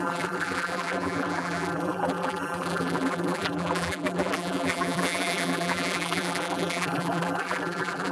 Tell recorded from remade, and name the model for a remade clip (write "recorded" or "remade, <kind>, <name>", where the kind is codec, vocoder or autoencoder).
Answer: remade, vocoder, BigVGAN v2